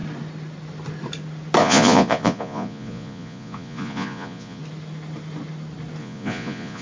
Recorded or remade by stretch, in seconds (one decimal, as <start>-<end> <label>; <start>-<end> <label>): 0.0-1.6 recorded; 1.6-4.6 remade; 4.6-6.0 recorded; 6.0-6.8 remade